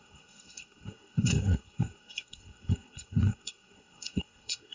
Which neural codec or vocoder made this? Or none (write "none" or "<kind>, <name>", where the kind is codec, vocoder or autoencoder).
codec, SNAC